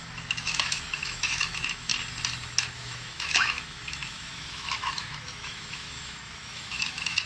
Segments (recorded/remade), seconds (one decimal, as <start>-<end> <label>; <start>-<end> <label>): 0.0-1.9 remade; 1.9-2.6 recorded; 2.6-7.3 remade